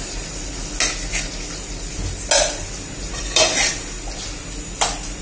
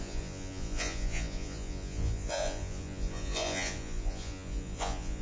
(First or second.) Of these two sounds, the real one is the first